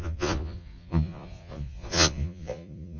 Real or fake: fake